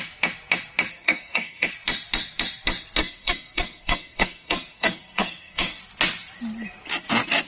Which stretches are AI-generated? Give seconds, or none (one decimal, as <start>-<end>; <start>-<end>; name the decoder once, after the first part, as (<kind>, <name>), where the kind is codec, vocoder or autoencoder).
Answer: 0.9-1.7 (codec, SNAC); 3.0-5.8